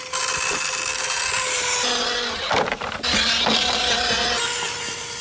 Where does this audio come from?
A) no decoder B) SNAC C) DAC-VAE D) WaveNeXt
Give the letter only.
A